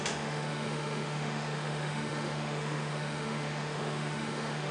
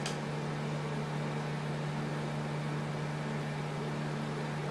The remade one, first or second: first